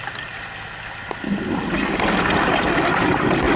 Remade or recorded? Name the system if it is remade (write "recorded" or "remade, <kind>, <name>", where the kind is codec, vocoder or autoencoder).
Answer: recorded